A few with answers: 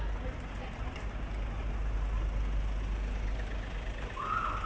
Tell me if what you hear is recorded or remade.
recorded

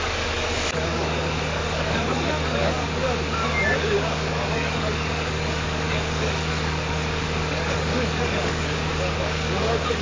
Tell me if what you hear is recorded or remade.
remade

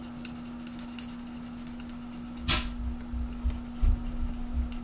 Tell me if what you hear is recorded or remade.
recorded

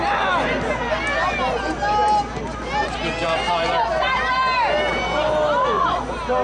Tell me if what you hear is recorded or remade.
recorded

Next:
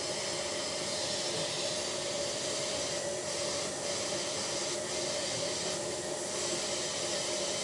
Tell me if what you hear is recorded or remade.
recorded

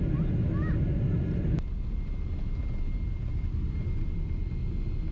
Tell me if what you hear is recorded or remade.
recorded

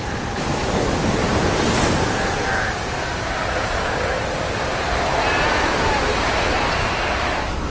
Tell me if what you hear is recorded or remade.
recorded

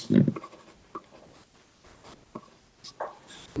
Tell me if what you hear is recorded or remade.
recorded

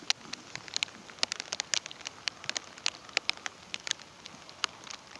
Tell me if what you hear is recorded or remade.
recorded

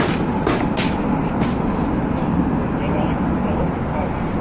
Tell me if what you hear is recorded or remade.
recorded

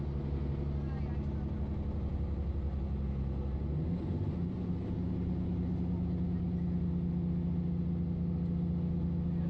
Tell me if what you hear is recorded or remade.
recorded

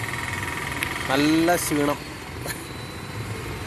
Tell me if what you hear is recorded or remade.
recorded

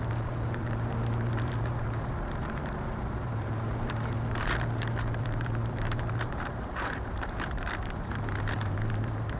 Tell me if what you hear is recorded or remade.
remade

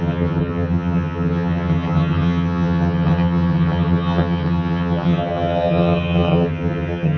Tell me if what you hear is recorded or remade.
remade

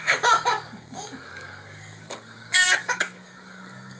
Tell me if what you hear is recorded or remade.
remade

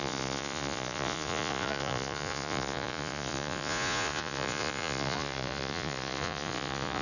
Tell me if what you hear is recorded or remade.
remade